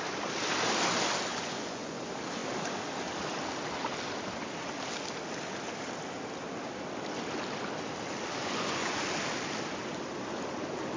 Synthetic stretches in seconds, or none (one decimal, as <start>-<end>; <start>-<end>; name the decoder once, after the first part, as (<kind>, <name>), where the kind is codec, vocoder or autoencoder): 1.3-2.0 (vocoder, Vocos); 8.4-9.0